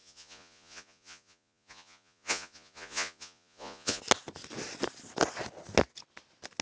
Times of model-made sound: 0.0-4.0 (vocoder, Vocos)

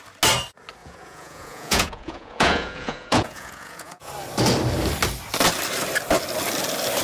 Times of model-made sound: 0.8-4.1 (vocoder, Vocos)

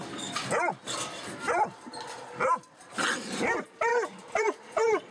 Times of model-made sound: none

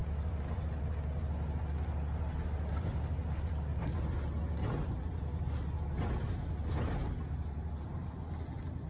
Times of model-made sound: none

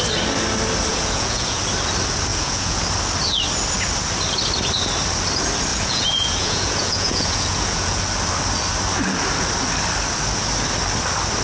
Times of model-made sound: 0.9-1.6 (vocoder, Vocos); 2.3-2.8; 5.7-8.0